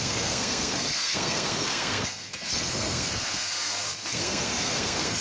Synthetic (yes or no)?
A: yes